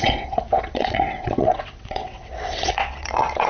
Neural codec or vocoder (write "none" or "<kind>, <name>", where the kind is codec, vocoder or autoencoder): vocoder, WaveNeXt